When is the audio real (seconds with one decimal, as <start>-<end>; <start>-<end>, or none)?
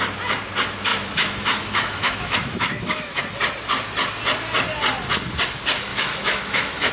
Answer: 0.0-0.9; 3.2-5.9